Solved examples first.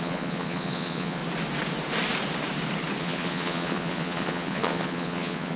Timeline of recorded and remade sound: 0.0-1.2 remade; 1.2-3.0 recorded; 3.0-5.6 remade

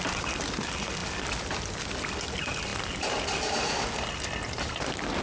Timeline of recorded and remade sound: 0.0-5.2 recorded

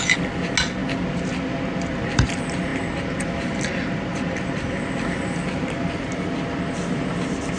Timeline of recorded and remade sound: 0.0-7.6 recorded

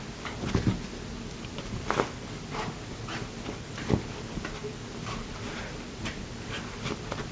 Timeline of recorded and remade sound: 0.0-4.6 recorded; 4.6-5.4 remade; 5.4-7.3 recorded

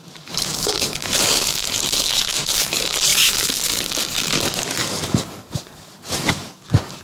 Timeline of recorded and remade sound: 0.0-7.0 remade